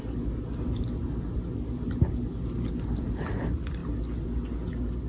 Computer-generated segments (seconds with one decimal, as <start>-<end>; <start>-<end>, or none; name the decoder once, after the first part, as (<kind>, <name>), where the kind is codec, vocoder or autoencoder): none